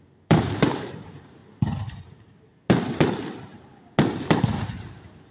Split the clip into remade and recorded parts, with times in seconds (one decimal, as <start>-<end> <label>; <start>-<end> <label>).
0.0-1.4 remade; 1.4-2.0 recorded; 2.0-2.5 remade; 2.5-3.2 recorded; 3.2-3.7 remade; 3.7-4.4 recorded; 4.4-5.3 remade